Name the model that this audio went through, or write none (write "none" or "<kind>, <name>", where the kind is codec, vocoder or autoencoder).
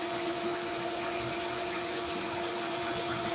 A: vocoder, Vocos